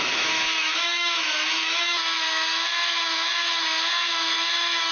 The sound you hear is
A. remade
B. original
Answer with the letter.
A